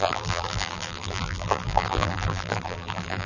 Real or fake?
fake